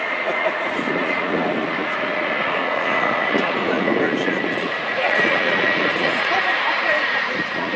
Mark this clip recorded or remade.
remade